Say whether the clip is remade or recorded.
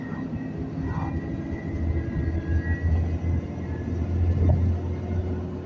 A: recorded